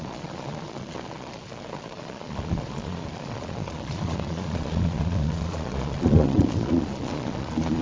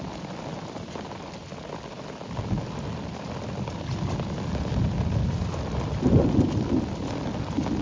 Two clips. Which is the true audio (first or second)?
second